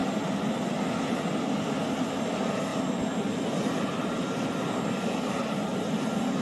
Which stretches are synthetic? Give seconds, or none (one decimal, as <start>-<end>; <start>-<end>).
0.0-0.8